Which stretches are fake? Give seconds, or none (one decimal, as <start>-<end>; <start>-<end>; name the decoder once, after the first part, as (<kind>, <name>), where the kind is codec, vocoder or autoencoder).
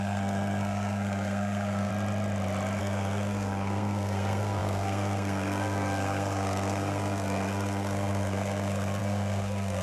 0.0-1.9 (codec, SNAC); 2.8-9.8